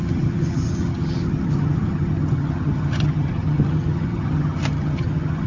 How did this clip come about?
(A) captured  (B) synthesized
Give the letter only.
B